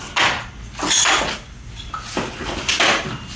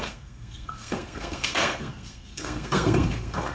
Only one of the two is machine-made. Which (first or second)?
second